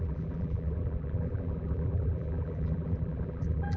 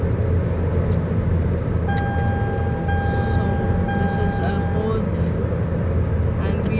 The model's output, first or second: first